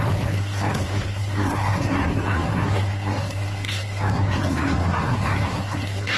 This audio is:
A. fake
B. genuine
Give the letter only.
A